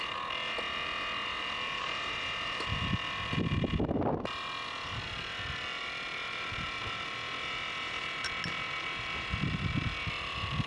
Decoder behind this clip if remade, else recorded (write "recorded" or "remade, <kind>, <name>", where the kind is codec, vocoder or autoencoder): recorded